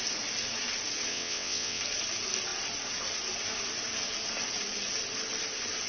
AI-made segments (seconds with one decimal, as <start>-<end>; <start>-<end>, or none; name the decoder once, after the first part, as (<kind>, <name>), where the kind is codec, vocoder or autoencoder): 1.1-1.8 (vocoder, WaveNeXt)